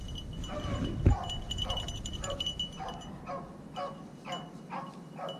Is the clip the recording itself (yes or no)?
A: yes